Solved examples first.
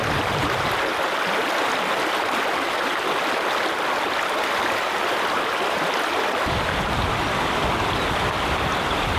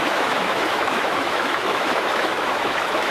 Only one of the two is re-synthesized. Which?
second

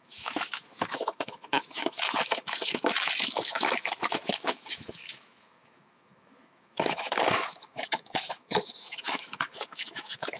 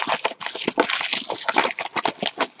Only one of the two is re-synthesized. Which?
first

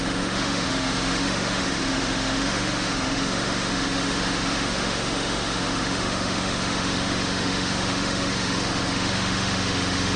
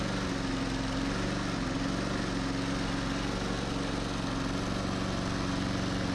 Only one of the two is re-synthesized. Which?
first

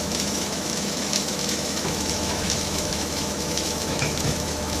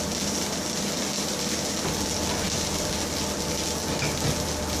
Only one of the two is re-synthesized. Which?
first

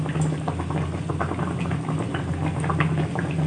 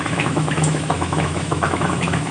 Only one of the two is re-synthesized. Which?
second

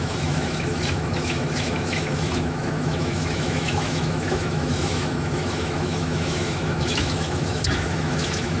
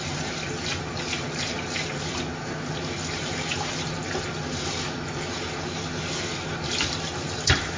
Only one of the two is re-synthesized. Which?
first